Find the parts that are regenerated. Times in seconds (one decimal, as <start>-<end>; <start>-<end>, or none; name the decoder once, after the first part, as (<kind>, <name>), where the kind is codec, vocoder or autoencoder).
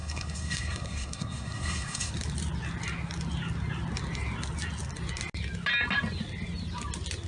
0.0-2.1 (codec, SNAC)